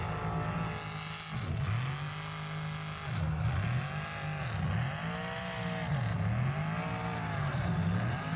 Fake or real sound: real